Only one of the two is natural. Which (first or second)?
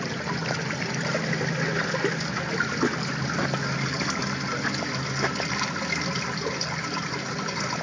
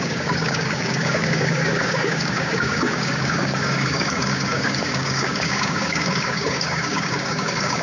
first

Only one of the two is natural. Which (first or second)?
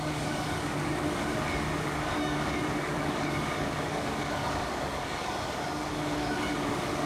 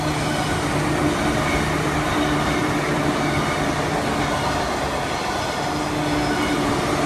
second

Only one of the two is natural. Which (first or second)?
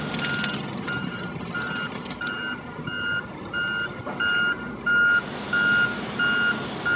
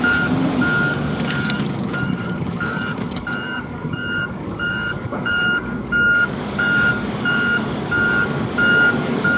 first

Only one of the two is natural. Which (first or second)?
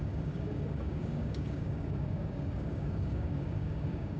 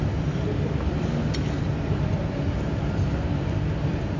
second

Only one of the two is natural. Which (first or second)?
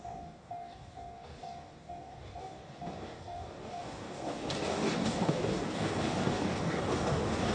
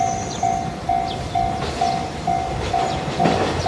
second